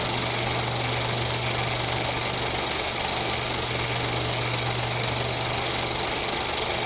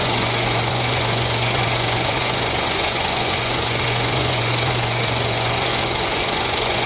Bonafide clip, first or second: first